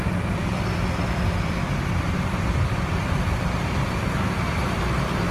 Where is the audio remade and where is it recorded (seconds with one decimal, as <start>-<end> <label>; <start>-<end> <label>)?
0.0-0.4 recorded; 0.4-3.6 remade; 3.6-5.3 recorded